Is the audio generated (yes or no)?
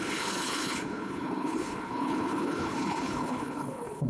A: yes